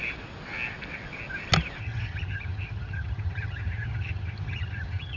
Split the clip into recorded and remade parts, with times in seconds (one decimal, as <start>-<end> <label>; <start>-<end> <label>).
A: 0.0-1.8 recorded; 1.8-5.2 remade